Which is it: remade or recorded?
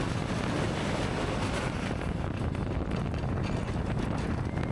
recorded